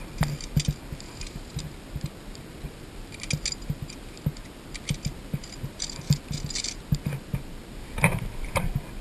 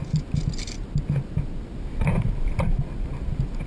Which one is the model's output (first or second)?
second